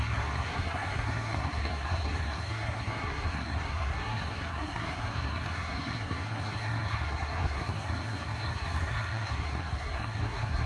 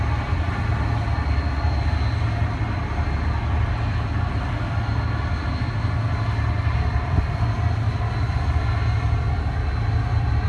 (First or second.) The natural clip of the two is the second